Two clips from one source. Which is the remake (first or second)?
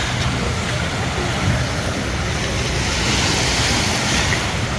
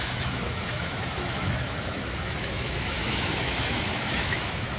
second